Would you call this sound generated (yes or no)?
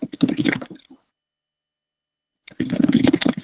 yes